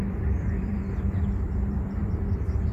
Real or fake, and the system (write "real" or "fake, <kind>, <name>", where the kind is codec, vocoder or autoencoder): fake, vocoder, BigVGAN v2